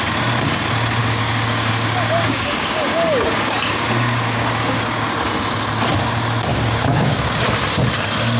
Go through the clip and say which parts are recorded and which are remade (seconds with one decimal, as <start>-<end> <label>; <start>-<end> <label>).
0.0-1.0 recorded; 1.0-4.8 remade; 4.8-6.5 recorded; 6.5-7.5 remade; 7.5-8.4 recorded